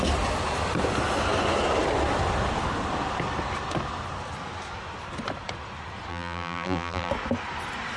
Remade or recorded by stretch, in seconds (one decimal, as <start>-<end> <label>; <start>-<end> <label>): 0.0-6.1 recorded; 6.1-7.1 remade; 7.1-8.0 recorded